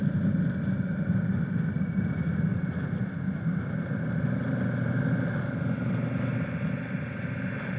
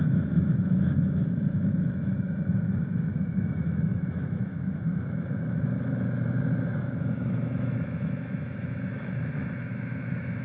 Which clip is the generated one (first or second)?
second